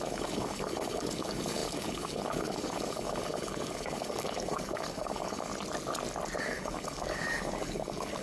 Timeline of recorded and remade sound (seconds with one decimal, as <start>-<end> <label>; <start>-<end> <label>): 0.0-5.5 remade; 5.5-6.4 recorded; 6.4-8.2 remade